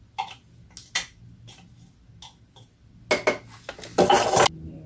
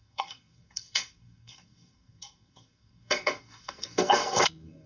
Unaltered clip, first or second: first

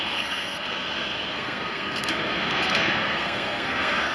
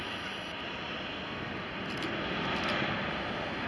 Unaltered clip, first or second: second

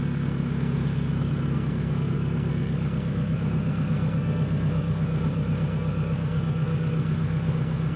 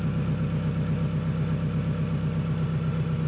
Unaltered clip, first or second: second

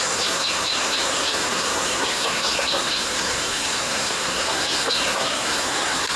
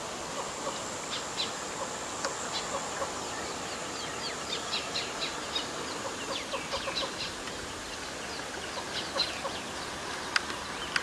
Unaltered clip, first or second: second